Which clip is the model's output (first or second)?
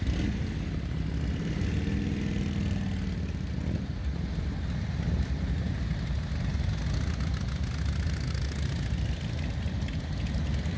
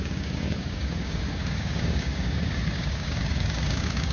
second